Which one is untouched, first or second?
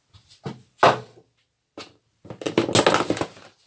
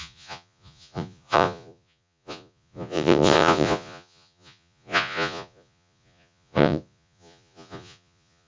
first